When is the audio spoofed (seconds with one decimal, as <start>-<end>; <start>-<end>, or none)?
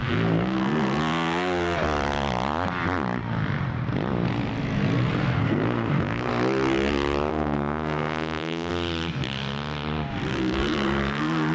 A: 0.0-1.0; 5.4-6.3; 7.3-8.7; 10.3-11.5